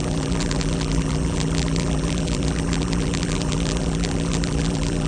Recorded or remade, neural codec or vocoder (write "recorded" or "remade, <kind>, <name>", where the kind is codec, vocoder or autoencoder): remade, vocoder, BigVGAN v2